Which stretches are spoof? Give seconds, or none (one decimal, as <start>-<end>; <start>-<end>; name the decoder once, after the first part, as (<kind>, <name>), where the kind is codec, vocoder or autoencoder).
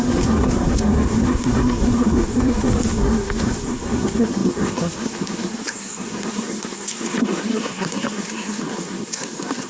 0.0-9.7 (codec, SNAC)